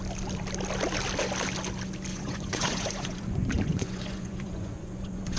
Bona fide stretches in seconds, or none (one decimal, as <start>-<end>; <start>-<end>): 0.0-2.1